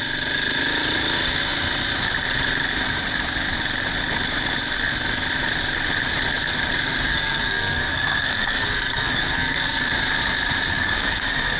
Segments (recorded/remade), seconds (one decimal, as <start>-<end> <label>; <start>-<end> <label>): 0.0-7.1 recorded; 7.1-9.9 remade; 9.9-10.7 recorded; 10.7-11.6 remade